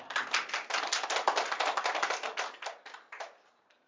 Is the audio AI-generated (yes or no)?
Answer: no